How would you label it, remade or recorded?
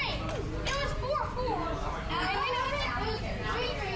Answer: recorded